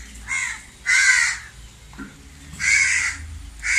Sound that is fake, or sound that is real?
real